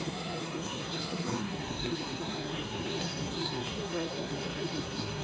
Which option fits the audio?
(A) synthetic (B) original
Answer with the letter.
A